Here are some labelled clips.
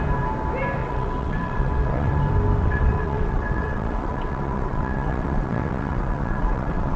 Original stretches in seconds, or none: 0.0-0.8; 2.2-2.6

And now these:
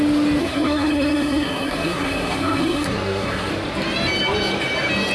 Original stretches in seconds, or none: 0.0-0.4; 3.5-5.1